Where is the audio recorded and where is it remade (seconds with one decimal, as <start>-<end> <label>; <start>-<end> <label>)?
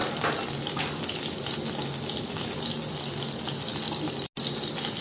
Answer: 0.0-5.0 recorded